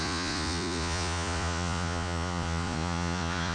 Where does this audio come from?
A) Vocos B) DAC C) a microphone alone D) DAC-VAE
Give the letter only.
A